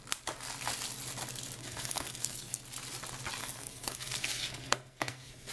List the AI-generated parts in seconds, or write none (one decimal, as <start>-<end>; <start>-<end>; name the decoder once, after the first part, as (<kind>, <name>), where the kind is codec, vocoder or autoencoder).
1.6-2.6 (codec, SNAC); 3.4-5.5